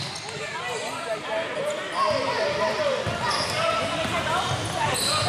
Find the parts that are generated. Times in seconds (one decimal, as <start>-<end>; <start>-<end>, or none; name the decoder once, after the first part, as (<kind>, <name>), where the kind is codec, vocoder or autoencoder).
1.6-2.8 (vocoder, BigVGAN v2)